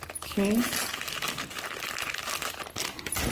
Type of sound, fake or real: real